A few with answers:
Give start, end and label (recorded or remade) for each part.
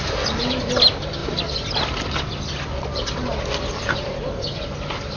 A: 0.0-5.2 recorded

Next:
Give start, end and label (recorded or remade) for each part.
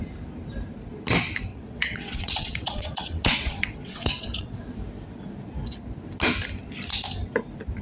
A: 0.0-1.5 recorded; 1.5-4.6 remade; 4.6-7.8 recorded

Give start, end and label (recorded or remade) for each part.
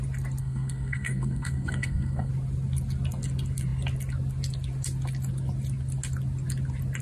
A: 0.0-0.4 recorded; 0.4-2.3 remade; 2.3-7.0 recorded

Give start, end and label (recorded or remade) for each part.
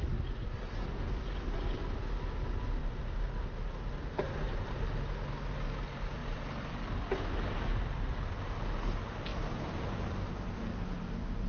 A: 0.0-2.8 recorded; 2.8-4.8 remade; 4.8-9.3 recorded; 9.3-10.3 remade; 10.3-11.5 recorded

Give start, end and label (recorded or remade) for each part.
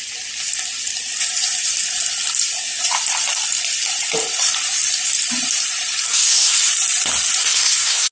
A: 0.0-6.1 recorded; 6.1-6.7 remade; 6.7-7.4 recorded; 7.4-8.1 remade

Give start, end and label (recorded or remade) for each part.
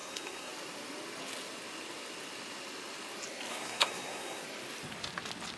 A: 0.0-0.5 remade; 0.5-3.5 recorded; 3.5-4.4 remade; 4.4-5.6 recorded